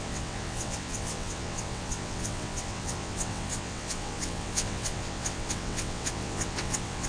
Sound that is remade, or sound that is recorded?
remade